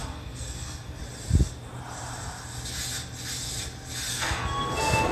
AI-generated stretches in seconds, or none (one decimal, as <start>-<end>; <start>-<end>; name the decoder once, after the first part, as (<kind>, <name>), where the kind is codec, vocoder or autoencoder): 0.0-1.0 (codec, SNAC); 4.1-5.1